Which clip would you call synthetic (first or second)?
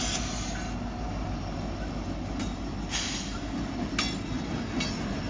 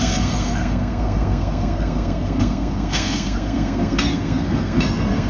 second